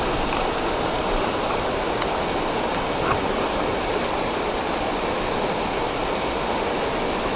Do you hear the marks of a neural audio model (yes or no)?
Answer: no